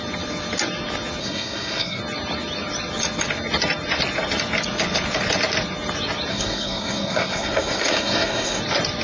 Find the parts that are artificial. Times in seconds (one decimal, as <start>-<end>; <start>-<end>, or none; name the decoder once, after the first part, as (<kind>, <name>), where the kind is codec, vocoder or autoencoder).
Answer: 1.2-2.0 (codec, SNAC); 6.3-8.6